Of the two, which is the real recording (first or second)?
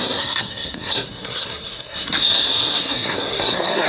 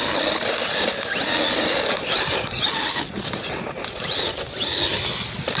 second